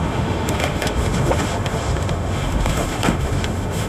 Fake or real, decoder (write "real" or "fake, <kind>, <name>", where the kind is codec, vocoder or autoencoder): fake, autoencoder, DAC-VAE